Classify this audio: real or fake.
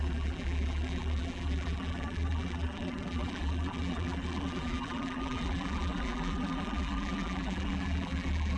fake